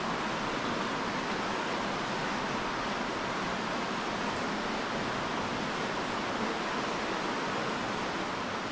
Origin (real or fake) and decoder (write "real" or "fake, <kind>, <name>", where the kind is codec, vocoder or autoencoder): real